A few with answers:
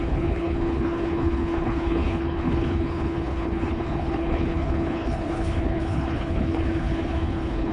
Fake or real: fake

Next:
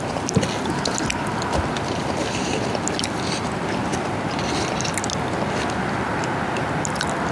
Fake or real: real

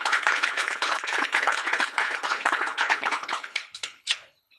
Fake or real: fake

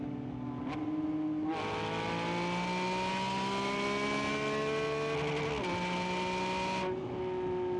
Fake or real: real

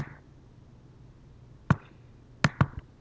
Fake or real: real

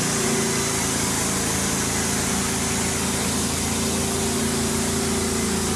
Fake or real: real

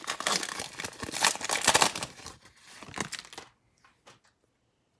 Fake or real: real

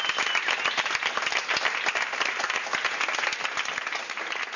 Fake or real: real